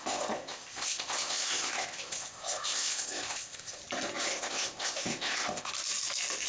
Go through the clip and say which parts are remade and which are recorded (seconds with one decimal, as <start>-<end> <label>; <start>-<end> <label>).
0.0-3.8 remade; 3.8-4.3 recorded; 4.3-5.7 remade; 5.7-6.5 recorded